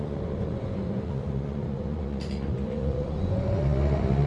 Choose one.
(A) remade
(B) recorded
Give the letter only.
A